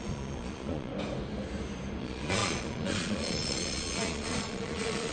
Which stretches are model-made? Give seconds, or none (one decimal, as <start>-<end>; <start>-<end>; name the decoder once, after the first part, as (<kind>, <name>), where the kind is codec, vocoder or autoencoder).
0.0-0.9 (vocoder, Vocos); 2.0-5.1